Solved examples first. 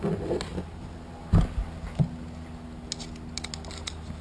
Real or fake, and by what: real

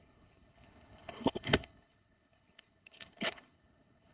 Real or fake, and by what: fake, codec, HILCodec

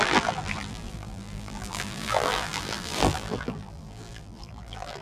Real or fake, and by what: fake, vocoder, BigVGAN v2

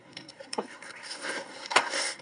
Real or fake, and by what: fake, codec, SNAC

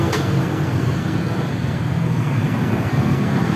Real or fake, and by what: fake, codec, SNAC